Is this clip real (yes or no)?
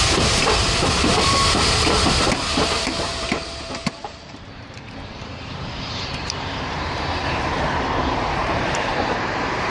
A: no